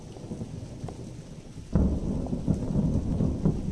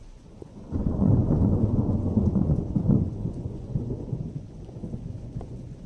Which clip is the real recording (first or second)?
first